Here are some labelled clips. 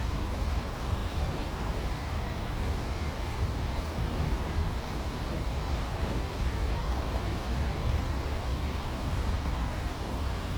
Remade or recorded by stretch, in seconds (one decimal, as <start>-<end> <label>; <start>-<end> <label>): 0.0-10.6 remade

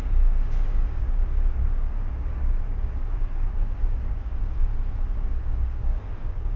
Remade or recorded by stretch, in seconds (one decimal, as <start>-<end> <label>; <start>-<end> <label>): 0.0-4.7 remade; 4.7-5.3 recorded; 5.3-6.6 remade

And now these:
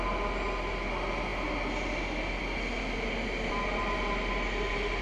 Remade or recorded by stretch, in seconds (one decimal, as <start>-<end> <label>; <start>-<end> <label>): 0.0-5.0 recorded